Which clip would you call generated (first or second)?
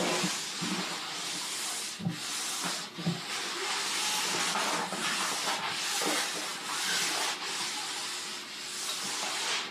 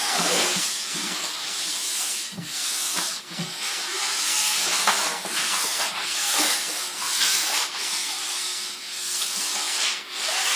second